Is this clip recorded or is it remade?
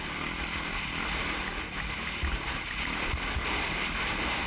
recorded